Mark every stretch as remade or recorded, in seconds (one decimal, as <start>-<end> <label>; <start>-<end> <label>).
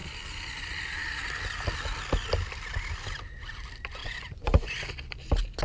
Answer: 0.0-4.0 recorded; 4.0-4.7 remade; 4.7-5.6 recorded